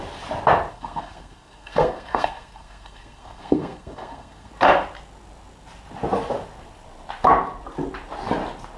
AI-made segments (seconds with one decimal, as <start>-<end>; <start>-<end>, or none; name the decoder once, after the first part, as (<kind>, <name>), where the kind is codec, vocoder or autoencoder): 0.7-4.5 (codec, SNAC)